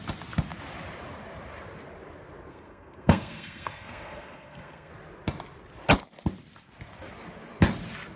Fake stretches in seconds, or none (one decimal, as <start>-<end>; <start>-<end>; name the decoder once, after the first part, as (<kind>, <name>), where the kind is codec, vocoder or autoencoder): 2.5-4.9 (codec, SNAC)